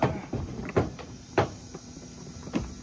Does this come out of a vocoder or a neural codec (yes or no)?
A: no